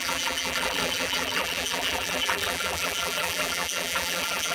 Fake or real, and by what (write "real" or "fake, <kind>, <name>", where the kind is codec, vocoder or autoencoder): fake, vocoder, BigVGAN v2